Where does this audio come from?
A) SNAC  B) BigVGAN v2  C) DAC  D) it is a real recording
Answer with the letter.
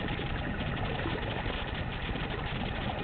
D